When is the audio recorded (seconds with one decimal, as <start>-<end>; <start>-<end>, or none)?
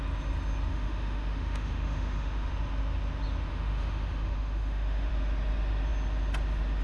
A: 0.0-0.7; 2.5-3.5; 5.1-6.8